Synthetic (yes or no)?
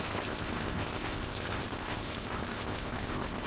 yes